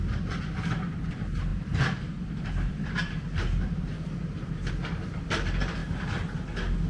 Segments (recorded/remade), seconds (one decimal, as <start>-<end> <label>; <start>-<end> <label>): 0.0-1.5 recorded; 1.5-4.7 remade; 4.7-6.9 recorded